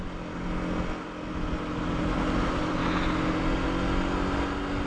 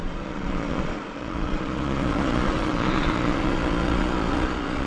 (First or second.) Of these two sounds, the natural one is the first